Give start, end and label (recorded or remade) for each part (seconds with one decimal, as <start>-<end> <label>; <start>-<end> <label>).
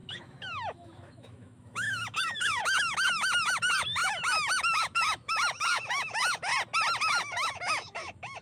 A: 0.0-6.5 remade; 6.5-7.0 recorded; 7.0-8.4 remade